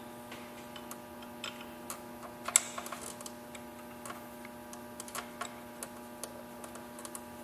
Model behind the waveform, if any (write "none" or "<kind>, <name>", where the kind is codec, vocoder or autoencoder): none